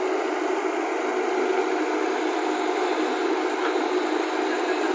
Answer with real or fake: real